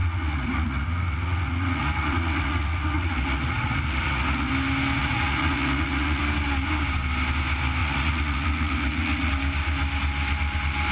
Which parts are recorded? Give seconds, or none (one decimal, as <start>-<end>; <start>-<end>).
4.5-5.0; 6.2-7.8; 9.3-10.9